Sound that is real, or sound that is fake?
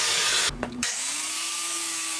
fake